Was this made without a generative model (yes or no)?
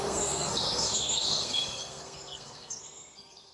no